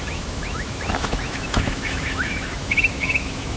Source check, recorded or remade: remade